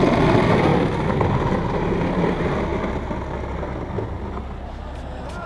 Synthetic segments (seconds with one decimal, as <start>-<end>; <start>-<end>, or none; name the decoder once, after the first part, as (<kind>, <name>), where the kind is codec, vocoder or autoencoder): none